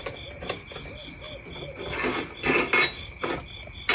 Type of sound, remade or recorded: recorded